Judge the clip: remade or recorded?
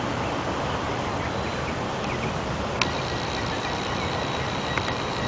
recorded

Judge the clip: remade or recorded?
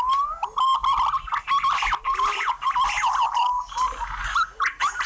recorded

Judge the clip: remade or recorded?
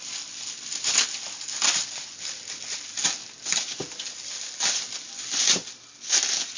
recorded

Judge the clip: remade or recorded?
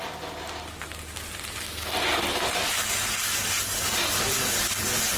recorded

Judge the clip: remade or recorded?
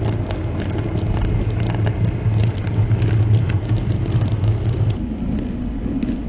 recorded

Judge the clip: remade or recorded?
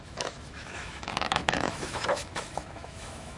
remade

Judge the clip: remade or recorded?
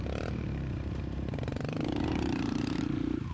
remade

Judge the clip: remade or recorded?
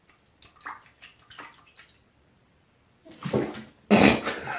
recorded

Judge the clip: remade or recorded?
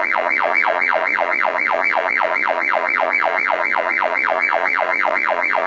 remade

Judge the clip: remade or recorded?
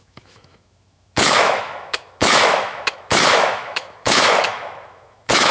remade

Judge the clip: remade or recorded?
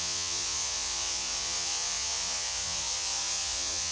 remade